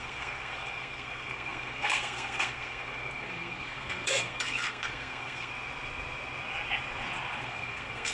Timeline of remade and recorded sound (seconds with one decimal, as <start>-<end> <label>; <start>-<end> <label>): 0.0-5.5 remade; 5.5-7.4 recorded; 7.4-8.1 remade